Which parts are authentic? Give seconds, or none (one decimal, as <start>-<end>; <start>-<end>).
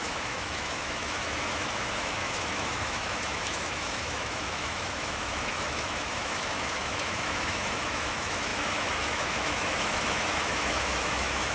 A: none